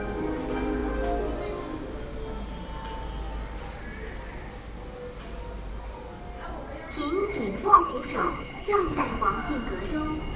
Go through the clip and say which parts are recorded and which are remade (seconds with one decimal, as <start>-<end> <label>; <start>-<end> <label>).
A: 0.0-7.2 recorded; 7.2-9.2 remade; 9.2-10.4 recorded